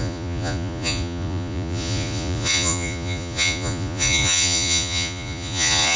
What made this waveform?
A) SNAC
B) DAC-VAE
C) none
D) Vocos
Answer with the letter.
D